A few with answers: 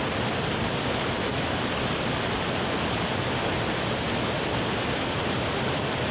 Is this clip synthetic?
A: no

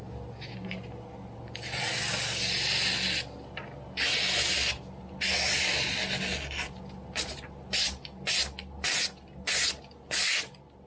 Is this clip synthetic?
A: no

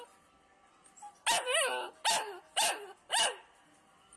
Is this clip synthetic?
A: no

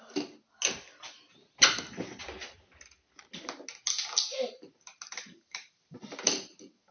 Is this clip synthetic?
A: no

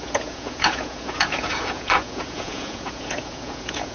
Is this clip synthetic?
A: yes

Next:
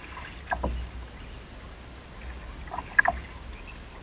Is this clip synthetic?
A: no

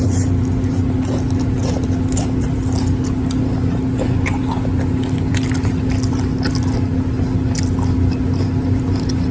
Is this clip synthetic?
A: no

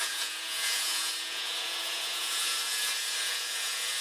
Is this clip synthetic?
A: yes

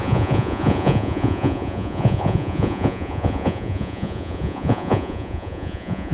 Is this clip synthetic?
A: yes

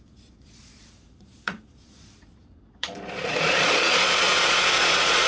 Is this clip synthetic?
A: yes